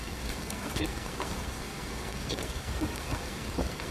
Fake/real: fake